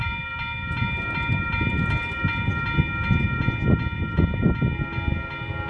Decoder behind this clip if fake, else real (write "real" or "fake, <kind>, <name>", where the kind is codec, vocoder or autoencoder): real